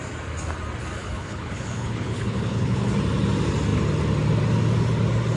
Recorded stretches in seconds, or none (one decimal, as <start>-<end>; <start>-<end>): 0.0-1.0; 2.9-5.4